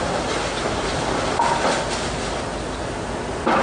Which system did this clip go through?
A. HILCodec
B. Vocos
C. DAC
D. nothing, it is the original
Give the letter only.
D